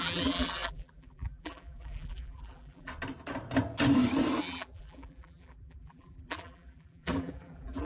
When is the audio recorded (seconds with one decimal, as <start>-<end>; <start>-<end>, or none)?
2.9-4.4